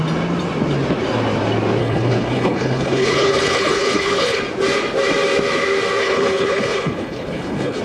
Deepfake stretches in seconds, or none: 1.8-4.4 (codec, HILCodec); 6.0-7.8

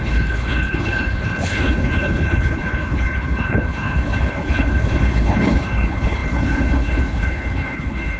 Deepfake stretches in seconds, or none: 0.0-8.2 (codec, HILCodec)

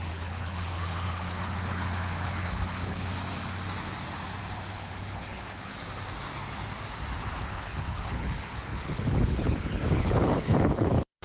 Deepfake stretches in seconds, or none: 0.0-3.1 (codec, HILCodec); 4.7-5.7; 7.4-11.2